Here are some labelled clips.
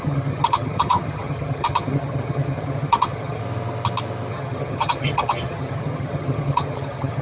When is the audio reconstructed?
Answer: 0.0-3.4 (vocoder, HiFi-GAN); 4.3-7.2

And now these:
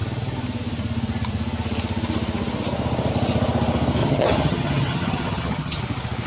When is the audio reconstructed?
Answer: 4.0-5.8 (vocoder, HiFi-GAN)

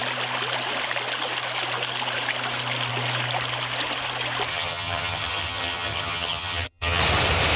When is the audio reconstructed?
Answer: 4.5-7.0 (vocoder, HiFi-GAN)